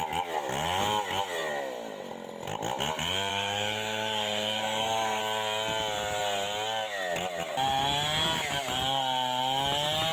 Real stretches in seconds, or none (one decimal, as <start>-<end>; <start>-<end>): 0.0-3.3; 5.2-10.1